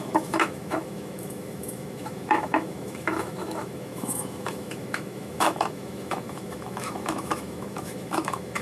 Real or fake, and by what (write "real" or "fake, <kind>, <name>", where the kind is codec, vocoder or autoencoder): fake, autoencoder, DAC-VAE